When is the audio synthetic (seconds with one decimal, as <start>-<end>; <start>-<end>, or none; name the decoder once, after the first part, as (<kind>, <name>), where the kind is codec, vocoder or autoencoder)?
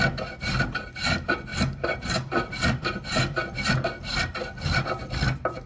1.5-3.7 (vocoder, BigVGAN v2)